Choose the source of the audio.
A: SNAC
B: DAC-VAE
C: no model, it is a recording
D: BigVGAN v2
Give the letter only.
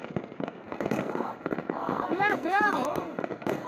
A